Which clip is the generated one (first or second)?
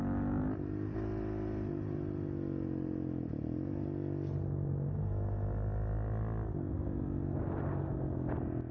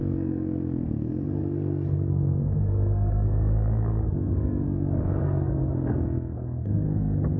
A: second